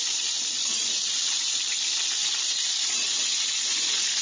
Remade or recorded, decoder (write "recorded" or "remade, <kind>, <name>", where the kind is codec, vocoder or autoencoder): recorded